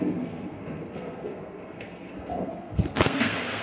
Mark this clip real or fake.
fake